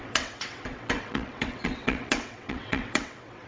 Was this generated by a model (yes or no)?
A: yes